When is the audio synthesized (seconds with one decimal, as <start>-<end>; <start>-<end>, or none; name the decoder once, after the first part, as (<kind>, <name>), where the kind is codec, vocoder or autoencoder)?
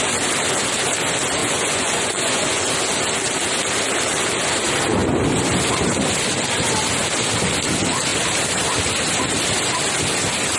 1.4-2.7 (vocoder, Vocos)